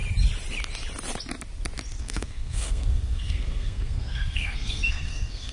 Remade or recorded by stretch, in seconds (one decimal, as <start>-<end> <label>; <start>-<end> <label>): 0.0-2.0 recorded; 2.0-5.5 remade

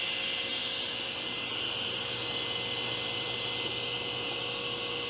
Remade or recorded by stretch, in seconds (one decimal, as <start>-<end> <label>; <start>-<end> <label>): 0.0-5.1 recorded